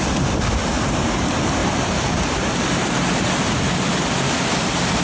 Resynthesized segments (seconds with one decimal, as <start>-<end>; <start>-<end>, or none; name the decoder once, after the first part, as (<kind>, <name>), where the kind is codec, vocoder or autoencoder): 1.6-2.3 (vocoder, BigVGAN v2)